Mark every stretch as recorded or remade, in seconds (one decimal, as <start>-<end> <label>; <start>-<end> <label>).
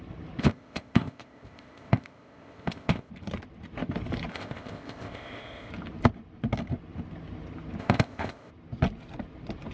0.0-0.4 recorded; 0.4-3.1 remade; 3.1-4.3 recorded; 4.3-5.7 remade; 5.7-7.8 recorded; 7.8-8.5 remade; 8.5-9.7 recorded